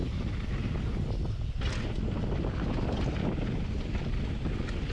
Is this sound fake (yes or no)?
no